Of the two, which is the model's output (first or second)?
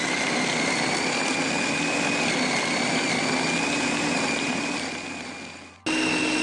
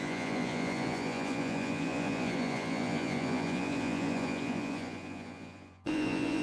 second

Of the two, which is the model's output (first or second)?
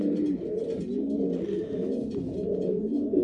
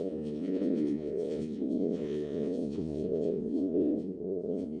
second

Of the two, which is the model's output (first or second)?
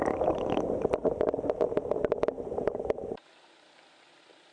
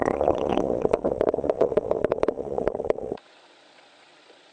second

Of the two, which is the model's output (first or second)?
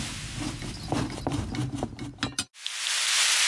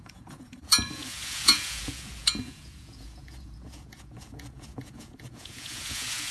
second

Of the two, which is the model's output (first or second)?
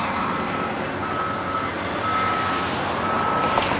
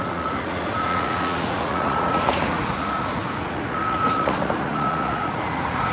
second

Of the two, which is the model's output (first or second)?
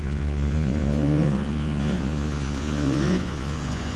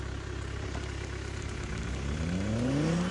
first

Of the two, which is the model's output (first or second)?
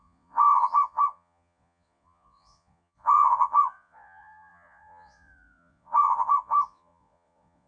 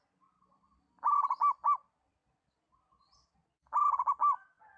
first